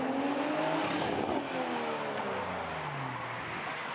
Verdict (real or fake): real